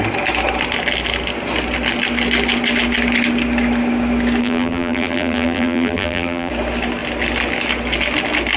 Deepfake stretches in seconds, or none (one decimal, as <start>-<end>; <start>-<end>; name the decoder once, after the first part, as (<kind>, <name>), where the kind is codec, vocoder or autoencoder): 4.4-6.5 (vocoder, BigVGAN v2)